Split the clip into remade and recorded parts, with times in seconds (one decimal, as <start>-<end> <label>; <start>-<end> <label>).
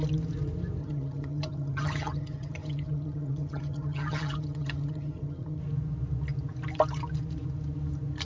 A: 0.0-0.8 recorded; 0.8-5.6 remade; 5.6-8.2 recorded